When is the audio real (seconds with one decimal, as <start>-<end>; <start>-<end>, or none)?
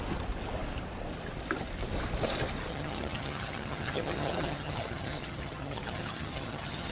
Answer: 0.0-2.7